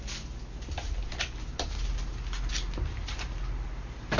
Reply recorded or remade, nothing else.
recorded